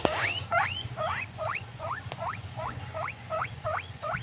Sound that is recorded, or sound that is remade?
remade